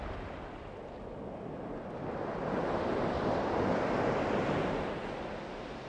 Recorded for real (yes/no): yes